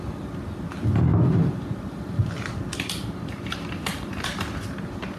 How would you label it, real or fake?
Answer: real